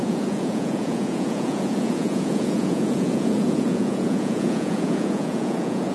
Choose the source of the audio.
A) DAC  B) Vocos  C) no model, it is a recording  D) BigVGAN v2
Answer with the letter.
B